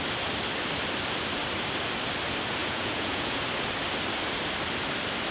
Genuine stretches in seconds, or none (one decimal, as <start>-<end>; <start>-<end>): 0.0-2.6; 3.4-5.3